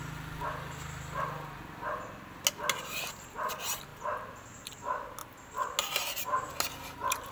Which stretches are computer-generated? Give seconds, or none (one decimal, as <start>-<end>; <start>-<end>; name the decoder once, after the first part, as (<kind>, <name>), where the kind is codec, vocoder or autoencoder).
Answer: none